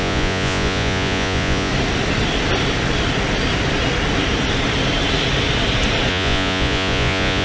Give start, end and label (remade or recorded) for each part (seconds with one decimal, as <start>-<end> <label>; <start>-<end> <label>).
0.0-1.7 remade; 1.7-6.1 recorded; 6.1-7.4 remade